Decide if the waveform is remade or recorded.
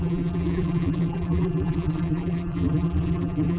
remade